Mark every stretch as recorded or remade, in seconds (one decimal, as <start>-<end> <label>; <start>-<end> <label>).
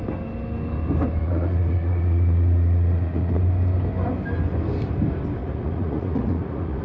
0.0-1.2 recorded; 1.2-3.4 remade; 3.4-5.4 recorded; 5.4-6.8 remade